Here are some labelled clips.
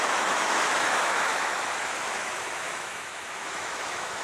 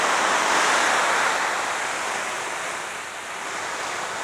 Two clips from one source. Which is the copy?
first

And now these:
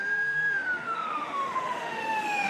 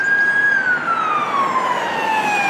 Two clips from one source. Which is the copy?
first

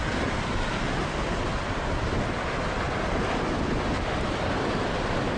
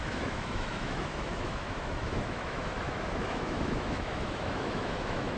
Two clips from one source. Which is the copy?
second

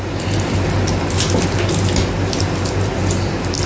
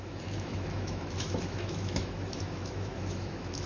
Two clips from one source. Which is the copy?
second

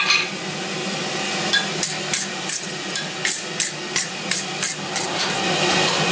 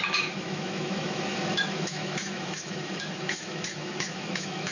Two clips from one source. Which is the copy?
second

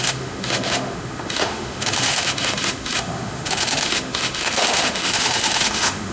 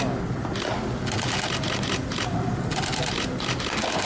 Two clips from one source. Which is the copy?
first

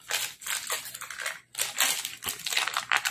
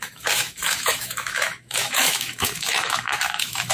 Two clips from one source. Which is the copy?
second